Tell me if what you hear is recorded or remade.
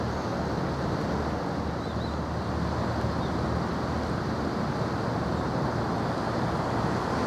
recorded